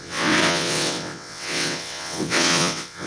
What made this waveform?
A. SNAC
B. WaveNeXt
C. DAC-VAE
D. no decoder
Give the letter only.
B